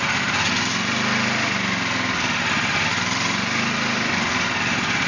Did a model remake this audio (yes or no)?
no